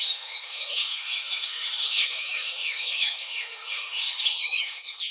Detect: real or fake fake